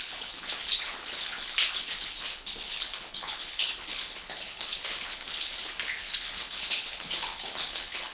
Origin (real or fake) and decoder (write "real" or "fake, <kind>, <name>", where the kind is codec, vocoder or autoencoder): fake, codec, HILCodec